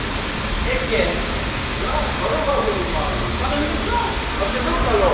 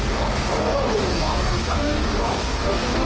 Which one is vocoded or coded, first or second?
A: second